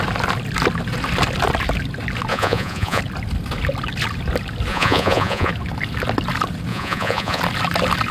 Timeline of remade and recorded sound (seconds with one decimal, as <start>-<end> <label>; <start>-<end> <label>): 0.0-2.3 recorded; 2.3-3.0 remade; 3.0-4.7 recorded; 4.7-5.5 remade; 5.5-6.7 recorded; 6.7-7.4 remade; 7.4-8.1 recorded